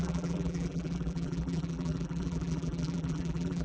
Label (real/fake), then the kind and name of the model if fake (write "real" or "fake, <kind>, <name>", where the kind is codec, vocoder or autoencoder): fake, vocoder, BigVGAN v2